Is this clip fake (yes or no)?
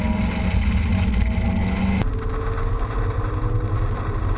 no